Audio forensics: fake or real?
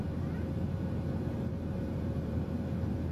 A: fake